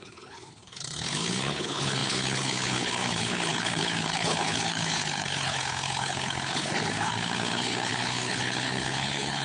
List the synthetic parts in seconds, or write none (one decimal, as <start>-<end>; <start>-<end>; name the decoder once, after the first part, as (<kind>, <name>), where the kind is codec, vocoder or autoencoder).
0.0-9.4 (codec, HILCodec)